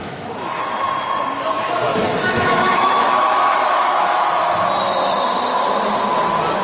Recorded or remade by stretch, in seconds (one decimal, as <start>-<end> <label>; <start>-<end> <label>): 0.0-0.9 remade; 0.9-1.9 recorded; 1.9-4.1 remade; 4.1-6.6 recorded